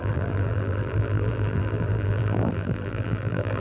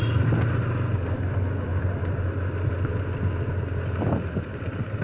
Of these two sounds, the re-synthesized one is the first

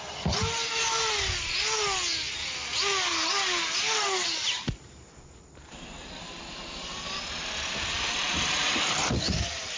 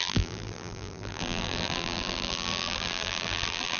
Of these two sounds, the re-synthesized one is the second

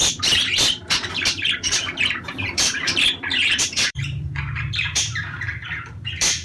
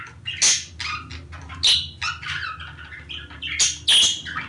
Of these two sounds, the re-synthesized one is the first